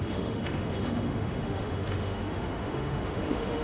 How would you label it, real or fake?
fake